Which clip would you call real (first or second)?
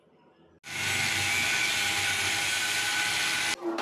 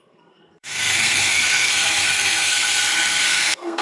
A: first